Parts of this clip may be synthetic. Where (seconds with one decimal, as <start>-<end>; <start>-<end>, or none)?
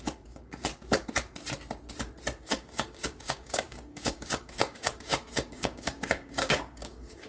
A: 0.0-0.7; 2.4-7.3